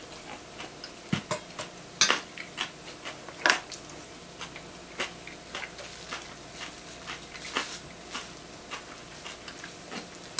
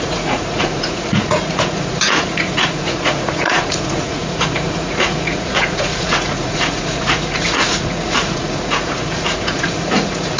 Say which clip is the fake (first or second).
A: second